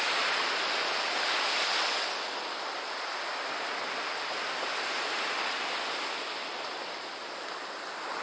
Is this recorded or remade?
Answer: recorded